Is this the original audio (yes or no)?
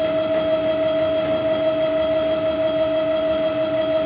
yes